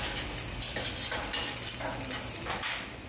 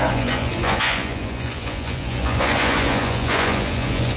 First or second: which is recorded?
first